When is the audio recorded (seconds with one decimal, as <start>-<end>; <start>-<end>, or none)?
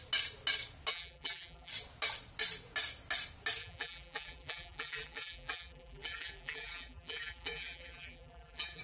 0.0-0.9; 1.7-3.6